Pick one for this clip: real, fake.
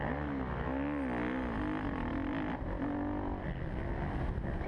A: real